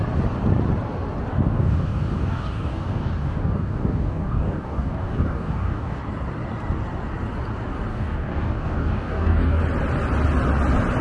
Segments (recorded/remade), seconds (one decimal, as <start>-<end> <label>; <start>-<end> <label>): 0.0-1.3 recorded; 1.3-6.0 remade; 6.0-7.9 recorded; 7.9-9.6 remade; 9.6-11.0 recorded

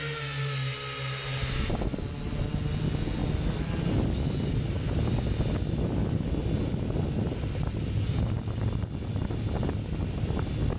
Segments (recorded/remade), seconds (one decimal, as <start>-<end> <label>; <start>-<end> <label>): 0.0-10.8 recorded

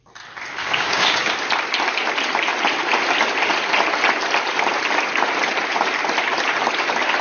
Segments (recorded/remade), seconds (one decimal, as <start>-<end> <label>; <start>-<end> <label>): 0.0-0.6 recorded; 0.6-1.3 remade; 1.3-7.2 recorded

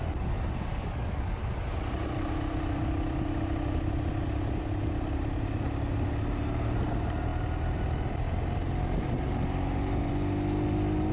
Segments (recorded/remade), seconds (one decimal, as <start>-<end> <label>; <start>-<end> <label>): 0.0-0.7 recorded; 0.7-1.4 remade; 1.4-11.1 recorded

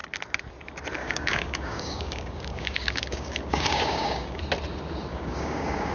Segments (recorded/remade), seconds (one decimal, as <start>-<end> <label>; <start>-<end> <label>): 0.0-1.0 recorded; 1.0-4.4 remade; 4.4-5.1 recorded; 5.1-5.9 remade

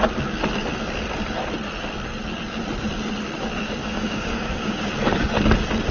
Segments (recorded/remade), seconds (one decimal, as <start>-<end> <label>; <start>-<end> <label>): 0.0-3.5 recorded; 3.5-4.9 remade; 4.9-5.9 recorded

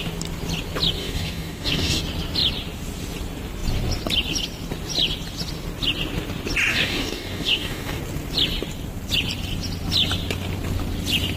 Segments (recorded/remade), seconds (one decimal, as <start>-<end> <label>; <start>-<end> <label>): 0.0-1.0 recorded; 1.0-2.0 remade; 2.0-6.7 recorded; 6.7-8.0 remade; 8.0-11.4 recorded

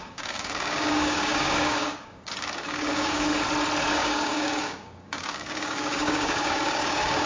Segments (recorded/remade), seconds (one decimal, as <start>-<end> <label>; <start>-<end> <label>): 0.0-3.3 remade; 3.3-3.9 recorded; 3.9-7.3 remade